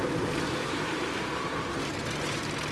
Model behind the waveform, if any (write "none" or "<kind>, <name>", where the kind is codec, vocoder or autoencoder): none